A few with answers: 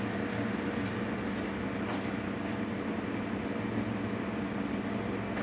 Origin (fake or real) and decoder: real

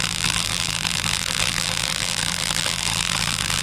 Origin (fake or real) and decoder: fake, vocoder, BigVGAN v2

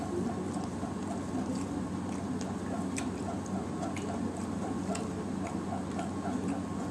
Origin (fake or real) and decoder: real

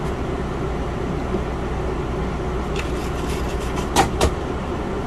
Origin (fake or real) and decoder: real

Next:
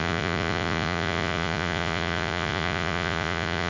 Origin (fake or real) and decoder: fake, vocoder, Vocos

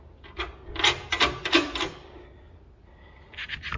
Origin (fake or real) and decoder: real